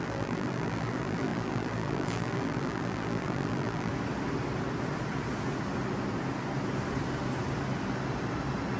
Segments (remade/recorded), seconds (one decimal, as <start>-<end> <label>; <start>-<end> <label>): 0.0-3.9 remade; 3.9-8.8 recorded